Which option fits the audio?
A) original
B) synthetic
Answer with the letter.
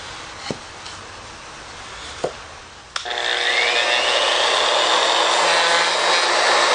A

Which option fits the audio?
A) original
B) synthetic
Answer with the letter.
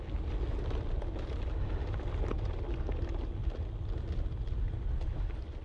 A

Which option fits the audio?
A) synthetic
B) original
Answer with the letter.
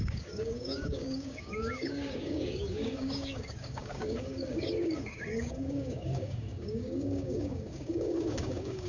A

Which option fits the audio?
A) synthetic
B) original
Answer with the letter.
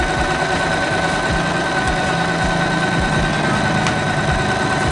B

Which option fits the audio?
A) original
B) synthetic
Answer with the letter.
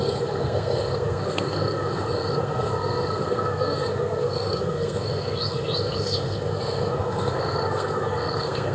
B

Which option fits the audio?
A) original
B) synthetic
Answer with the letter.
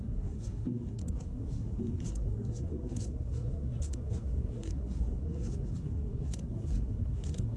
B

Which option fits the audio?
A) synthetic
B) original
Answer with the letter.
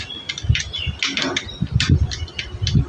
B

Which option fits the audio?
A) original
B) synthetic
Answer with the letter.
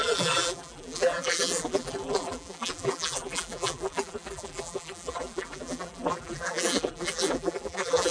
B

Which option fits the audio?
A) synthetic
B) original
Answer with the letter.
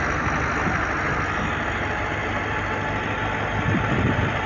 B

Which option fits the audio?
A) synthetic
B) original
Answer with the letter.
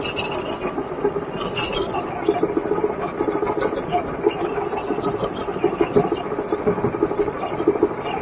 B